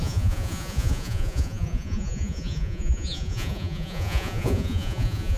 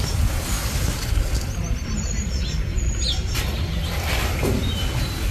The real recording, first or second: second